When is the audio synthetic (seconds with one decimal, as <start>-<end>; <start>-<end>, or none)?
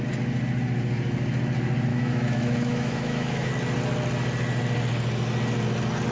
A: 1.9-3.5